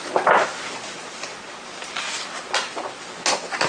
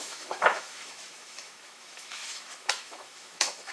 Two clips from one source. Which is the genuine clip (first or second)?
first